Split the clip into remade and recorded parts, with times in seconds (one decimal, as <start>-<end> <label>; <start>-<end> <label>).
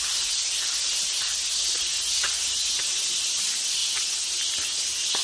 0.0-5.2 recorded